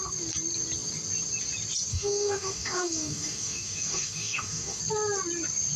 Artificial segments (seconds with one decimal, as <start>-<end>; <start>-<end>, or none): 1.9-4.8